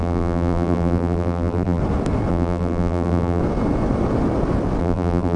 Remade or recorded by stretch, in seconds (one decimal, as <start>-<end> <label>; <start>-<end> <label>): 0.0-1.8 remade; 1.8-2.3 recorded; 2.3-3.4 remade; 3.4-4.8 recorded; 4.8-5.4 remade